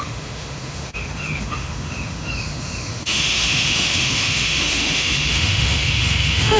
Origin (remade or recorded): remade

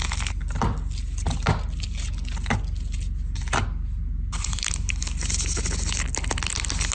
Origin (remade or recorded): recorded